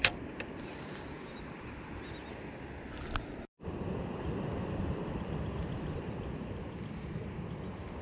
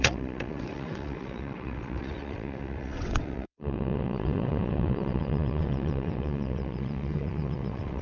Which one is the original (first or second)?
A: first